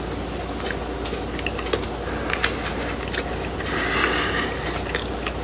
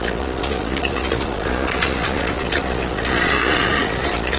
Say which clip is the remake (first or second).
second